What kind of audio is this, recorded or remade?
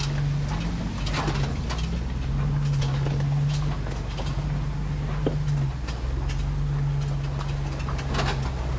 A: recorded